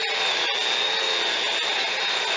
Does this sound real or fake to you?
real